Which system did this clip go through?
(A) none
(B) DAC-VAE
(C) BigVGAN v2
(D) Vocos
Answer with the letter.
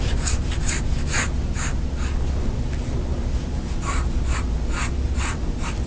A